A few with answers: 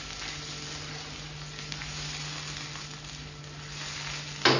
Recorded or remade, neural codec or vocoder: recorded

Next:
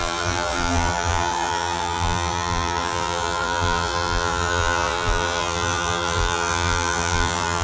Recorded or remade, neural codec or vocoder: remade, vocoder, BigVGAN v2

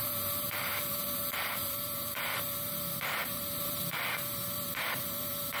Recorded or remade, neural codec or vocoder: remade, vocoder, BigVGAN v2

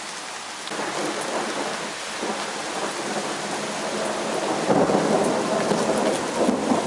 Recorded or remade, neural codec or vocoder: recorded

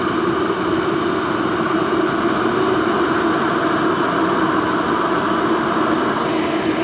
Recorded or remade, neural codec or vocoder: recorded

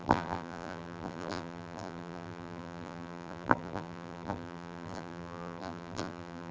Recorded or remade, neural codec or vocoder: remade, vocoder, BigVGAN v2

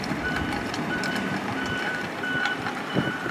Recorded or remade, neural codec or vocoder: remade, vocoder, BigVGAN v2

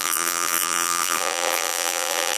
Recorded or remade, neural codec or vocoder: remade, vocoder, BigVGAN v2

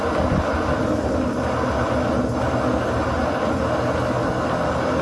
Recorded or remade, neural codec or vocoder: recorded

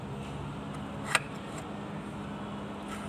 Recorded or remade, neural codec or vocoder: recorded